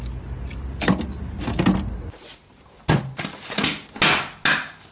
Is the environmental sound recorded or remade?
recorded